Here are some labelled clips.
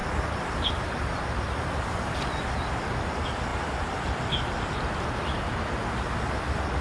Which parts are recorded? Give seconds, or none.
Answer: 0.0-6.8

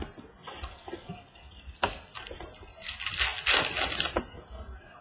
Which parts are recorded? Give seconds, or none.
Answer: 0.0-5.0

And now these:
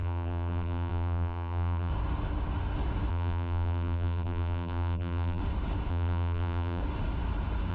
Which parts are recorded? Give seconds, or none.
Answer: 1.9-3.1; 5.4-5.9; 6.8-7.7